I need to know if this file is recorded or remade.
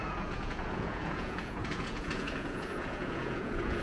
remade